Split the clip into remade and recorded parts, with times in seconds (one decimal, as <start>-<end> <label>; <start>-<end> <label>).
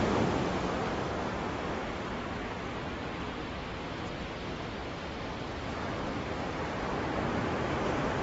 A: 0.0-8.2 recorded